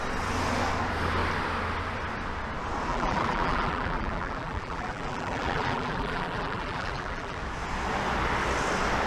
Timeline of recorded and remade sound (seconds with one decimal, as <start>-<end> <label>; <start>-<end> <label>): 0.0-2.9 recorded; 2.9-7.4 remade; 7.4-9.1 recorded